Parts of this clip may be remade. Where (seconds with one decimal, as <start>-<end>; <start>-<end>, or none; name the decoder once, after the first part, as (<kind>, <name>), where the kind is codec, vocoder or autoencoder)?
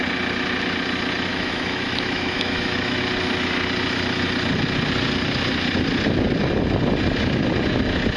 1.3-3.0 (autoencoder, DAC-VAE)